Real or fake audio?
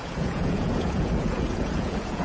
fake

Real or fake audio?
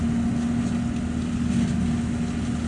real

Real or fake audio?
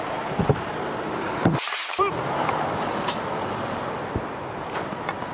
fake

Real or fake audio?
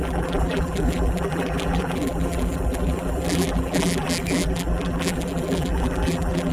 fake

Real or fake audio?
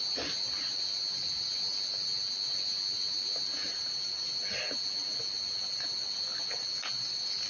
real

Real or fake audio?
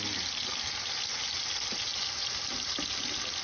real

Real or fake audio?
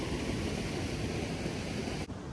real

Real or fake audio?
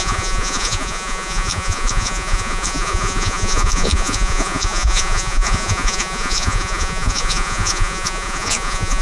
fake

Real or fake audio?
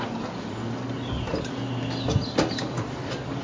real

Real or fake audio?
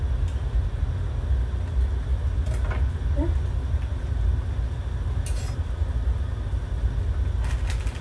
real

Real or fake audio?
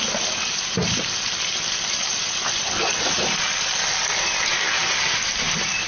real